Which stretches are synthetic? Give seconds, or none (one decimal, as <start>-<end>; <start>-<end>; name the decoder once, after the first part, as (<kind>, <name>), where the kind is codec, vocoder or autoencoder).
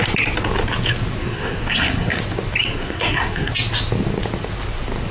1.2-2.2 (codec, SNAC); 2.6-3.5